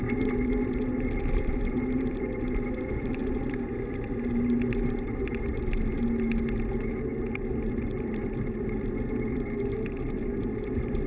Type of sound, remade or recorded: recorded